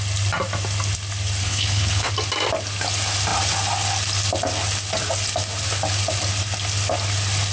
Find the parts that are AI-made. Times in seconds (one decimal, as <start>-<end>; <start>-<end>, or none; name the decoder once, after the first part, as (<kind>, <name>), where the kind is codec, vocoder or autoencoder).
1.4-2.1 (codec, HILCodec)